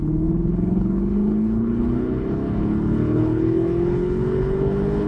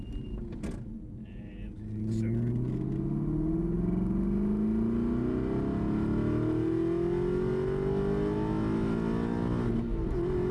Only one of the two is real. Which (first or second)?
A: second